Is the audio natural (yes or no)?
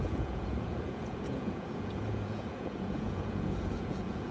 no